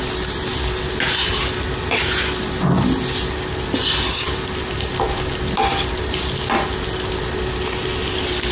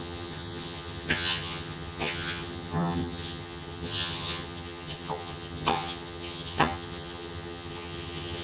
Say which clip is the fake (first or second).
second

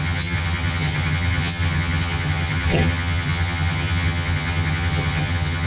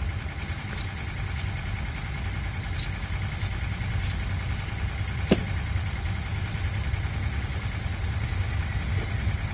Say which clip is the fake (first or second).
first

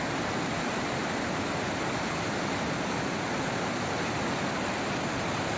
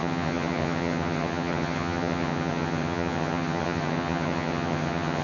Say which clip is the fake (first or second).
second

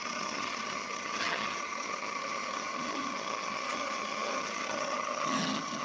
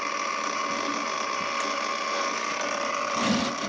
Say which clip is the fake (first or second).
first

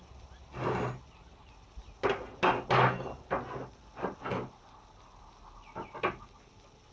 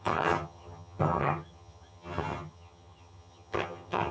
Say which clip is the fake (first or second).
second